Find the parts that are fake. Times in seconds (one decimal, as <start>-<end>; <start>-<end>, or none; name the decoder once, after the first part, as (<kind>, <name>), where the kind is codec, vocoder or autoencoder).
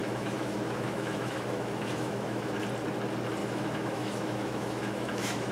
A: 0.0-2.6 (autoencoder, DAC-VAE); 3.4-5.5